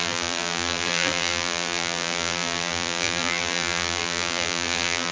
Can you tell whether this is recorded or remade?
remade